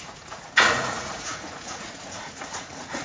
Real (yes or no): no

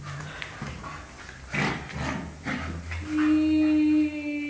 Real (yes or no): yes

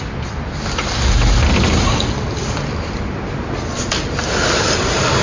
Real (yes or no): yes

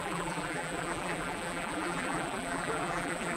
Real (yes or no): no